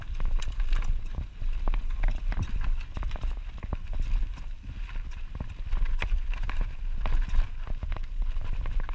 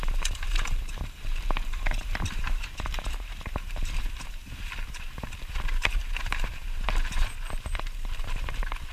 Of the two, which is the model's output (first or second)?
second